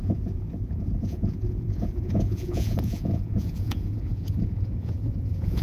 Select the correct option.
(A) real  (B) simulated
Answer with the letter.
B